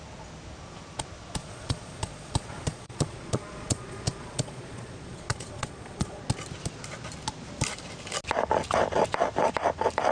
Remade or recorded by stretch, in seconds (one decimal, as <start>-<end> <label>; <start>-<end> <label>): 0.0-1.4 recorded; 1.4-6.2 remade; 6.2-10.1 recorded